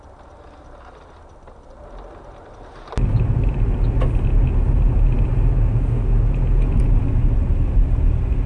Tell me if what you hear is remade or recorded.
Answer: recorded